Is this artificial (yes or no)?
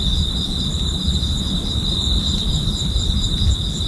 no